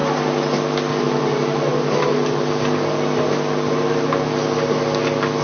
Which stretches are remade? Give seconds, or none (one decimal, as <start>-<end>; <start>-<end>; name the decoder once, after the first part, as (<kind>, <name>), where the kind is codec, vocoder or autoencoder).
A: none